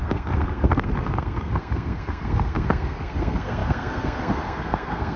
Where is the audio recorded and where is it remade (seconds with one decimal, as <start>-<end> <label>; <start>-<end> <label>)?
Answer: 0.0-5.2 remade